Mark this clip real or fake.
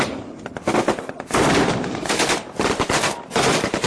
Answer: real